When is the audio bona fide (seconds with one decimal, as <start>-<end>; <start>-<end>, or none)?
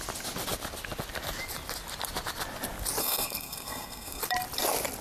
0.0-3.0; 4.2-5.0